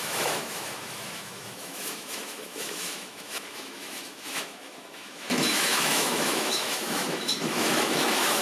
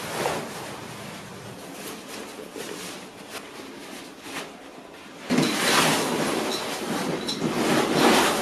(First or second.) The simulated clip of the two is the first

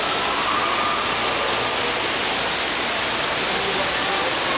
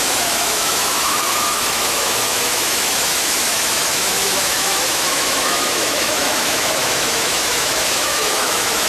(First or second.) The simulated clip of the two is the second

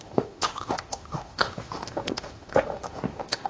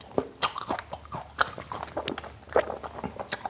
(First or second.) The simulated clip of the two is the first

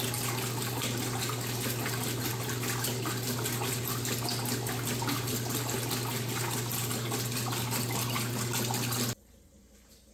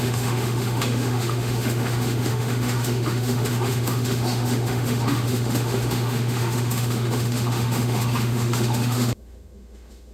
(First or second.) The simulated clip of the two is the second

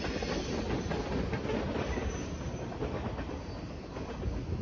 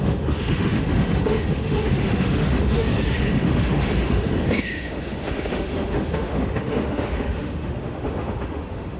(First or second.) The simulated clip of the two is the second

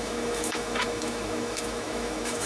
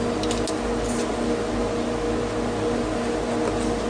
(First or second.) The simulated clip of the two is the first